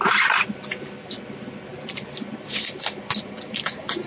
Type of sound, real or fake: fake